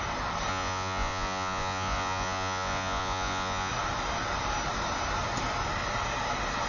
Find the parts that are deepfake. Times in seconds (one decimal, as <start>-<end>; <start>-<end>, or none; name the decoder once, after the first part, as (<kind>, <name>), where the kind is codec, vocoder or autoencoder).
0.5-3.7 (vocoder, Vocos)